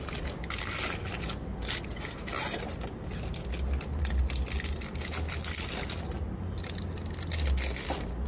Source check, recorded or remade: recorded